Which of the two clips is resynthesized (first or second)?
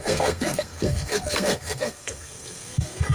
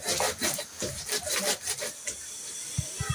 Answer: first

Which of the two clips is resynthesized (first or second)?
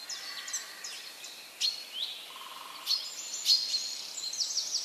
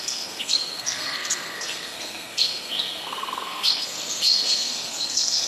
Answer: second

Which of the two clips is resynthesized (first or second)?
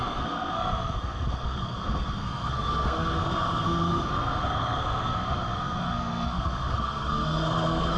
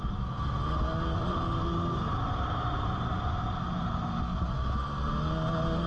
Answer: first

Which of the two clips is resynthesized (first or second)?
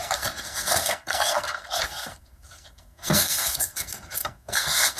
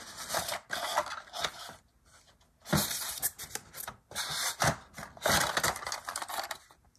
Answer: first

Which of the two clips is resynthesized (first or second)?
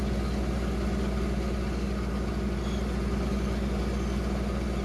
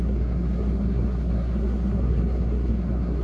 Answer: second